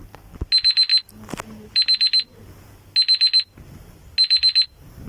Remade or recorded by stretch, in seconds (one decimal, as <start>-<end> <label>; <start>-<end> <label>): 0.0-5.1 recorded